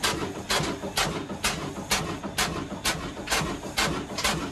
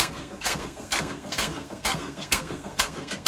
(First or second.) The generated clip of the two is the second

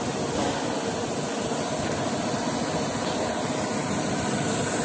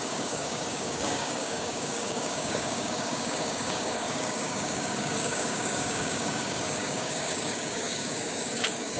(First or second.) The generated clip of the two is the second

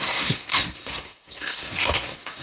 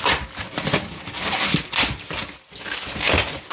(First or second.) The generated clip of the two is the first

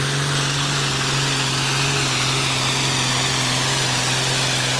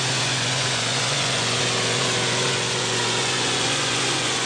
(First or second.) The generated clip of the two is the second